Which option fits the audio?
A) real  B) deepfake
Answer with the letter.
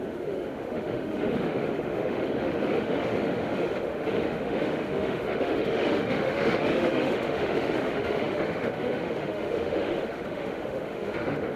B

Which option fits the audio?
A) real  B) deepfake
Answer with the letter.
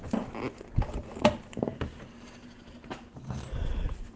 A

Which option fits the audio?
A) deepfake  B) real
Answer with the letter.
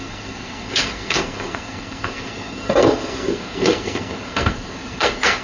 A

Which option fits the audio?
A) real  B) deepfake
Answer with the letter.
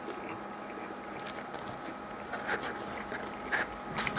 A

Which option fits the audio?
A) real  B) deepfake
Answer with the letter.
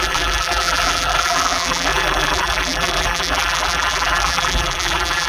B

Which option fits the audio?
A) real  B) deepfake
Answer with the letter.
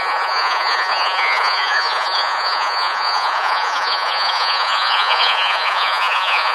B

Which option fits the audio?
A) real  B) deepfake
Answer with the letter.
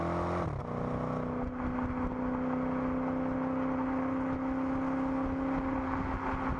A